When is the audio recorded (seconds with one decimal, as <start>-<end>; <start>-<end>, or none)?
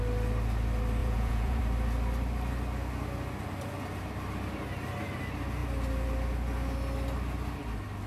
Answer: 0.0-1.0; 1.6-8.1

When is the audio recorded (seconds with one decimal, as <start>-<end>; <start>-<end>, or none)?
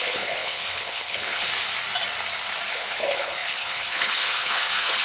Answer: 1.5-2.7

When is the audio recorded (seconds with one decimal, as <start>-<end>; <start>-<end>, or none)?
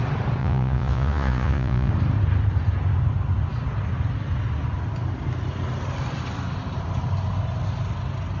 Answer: 0.0-0.4; 1.9-8.4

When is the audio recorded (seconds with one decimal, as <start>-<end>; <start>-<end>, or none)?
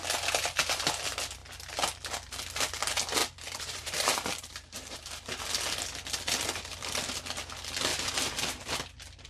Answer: 0.0-3.2; 5.4-7.9; 8.6-9.3